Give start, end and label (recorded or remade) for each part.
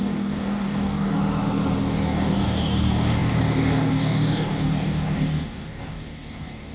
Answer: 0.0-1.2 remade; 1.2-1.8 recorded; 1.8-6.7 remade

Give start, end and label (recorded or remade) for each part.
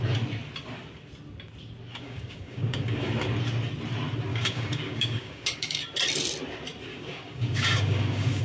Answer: 0.0-1.9 recorded; 1.9-3.1 remade; 3.1-4.3 recorded; 4.3-5.8 remade; 5.8-6.9 recorded; 6.9-8.4 remade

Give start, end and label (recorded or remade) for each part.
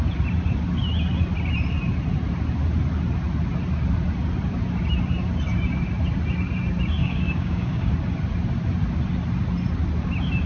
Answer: 0.0-7.0 recorded; 7.0-7.9 remade; 7.9-10.5 recorded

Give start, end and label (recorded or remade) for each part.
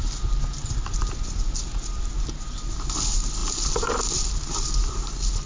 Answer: 0.0-5.5 recorded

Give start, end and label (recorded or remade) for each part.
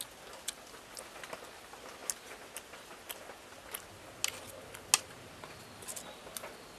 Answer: 0.0-6.8 recorded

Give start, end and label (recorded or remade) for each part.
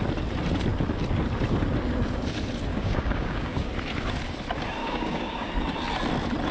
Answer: 0.0-2.7 recorded; 2.7-3.7 remade; 3.7-4.8 recorded; 4.8-5.5 remade; 5.5-6.5 recorded